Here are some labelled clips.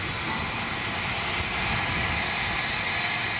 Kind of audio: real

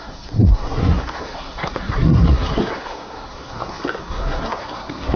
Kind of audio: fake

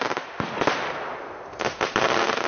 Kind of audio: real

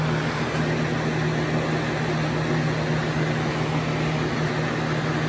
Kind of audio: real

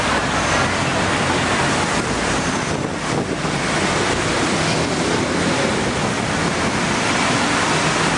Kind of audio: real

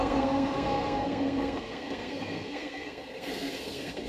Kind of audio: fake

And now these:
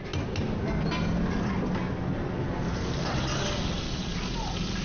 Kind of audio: real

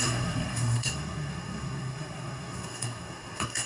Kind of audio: fake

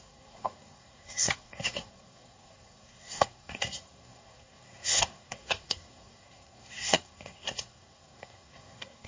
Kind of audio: fake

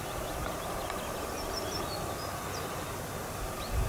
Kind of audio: real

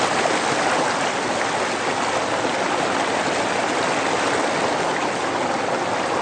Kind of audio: real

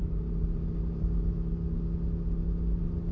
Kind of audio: real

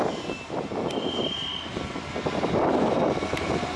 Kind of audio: real